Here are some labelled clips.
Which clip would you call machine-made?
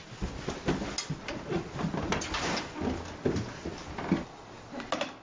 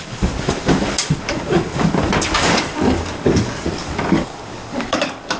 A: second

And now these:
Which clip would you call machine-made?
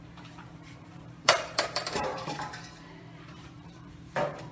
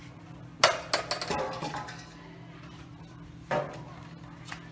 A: first